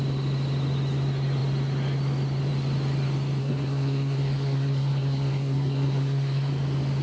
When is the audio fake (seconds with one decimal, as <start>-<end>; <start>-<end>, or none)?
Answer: 3.4-6.5